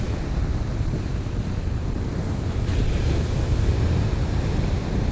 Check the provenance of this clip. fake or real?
real